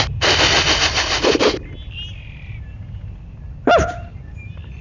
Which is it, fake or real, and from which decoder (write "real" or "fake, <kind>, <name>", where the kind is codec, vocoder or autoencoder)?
real